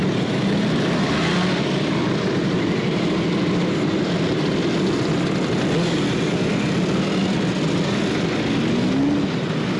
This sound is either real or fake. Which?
real